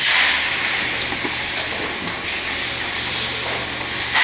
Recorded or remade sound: recorded